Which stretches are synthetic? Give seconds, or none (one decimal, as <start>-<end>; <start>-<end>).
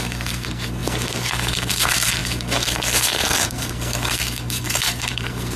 0.0-5.6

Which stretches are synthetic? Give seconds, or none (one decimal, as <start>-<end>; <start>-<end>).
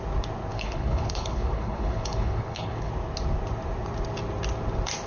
0.5-2.9